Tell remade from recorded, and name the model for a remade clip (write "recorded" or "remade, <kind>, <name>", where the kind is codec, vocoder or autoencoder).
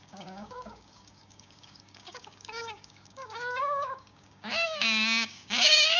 remade, codec, DAC